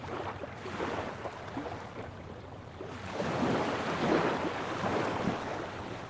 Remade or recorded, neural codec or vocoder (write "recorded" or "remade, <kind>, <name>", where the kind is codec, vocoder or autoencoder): recorded